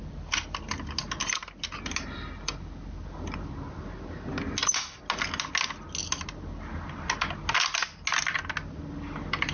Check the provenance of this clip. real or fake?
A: real